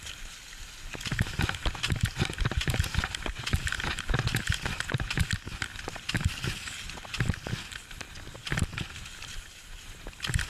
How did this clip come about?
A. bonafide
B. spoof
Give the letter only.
A